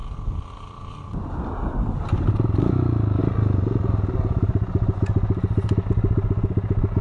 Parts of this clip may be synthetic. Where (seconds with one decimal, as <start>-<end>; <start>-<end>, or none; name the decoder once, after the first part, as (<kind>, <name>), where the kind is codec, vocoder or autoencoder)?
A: 0.0-1.8 (vocoder, BigVGAN v2)